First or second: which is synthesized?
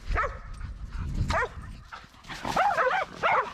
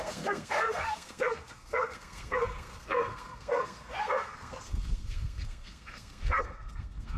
second